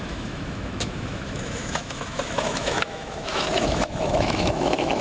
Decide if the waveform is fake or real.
fake